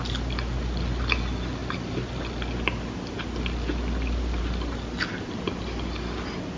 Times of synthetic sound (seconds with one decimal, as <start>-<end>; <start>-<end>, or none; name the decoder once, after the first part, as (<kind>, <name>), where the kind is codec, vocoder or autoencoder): none